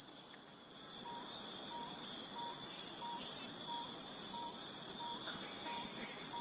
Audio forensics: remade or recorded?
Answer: recorded